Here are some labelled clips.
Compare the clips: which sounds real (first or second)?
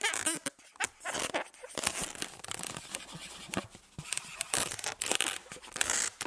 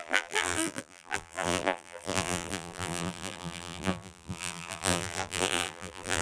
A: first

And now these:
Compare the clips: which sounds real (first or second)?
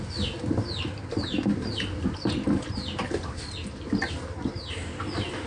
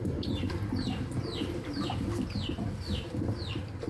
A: first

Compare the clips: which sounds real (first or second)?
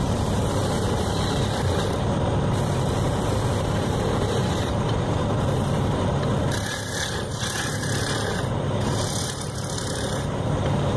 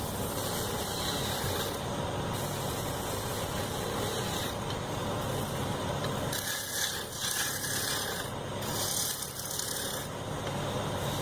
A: second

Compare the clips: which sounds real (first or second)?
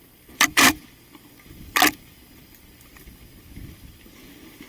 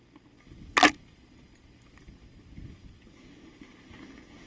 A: second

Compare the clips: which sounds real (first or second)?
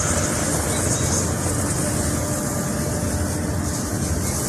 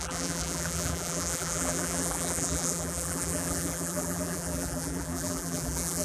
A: first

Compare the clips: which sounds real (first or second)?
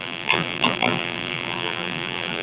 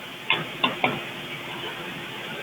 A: second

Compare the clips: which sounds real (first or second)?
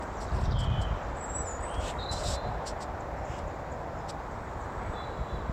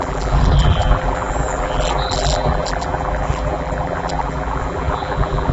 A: first